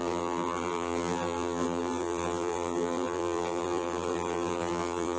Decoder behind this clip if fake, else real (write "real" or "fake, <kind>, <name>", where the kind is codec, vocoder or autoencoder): fake, vocoder, BigVGAN v2